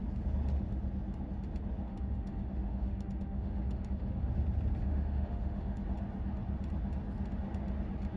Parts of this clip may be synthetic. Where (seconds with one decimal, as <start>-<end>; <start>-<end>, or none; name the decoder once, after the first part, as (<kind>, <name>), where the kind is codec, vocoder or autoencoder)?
1.9-4.3 (autoencoder, DAC-VAE); 4.8-5.8